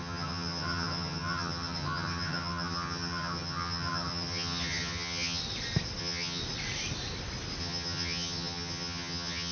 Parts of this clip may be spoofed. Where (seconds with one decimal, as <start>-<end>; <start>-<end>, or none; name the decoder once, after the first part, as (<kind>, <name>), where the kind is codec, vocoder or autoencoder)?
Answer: 0.0-5.4 (vocoder, HiFi-GAN); 6.0-6.4; 7.6-9.5